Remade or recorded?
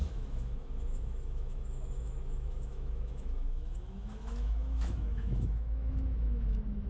remade